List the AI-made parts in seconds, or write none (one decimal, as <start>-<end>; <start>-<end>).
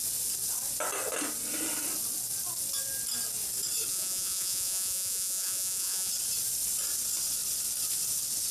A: 3.9-6.1